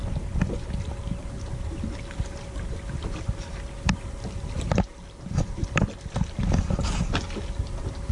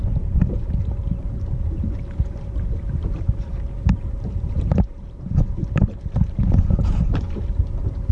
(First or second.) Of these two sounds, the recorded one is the first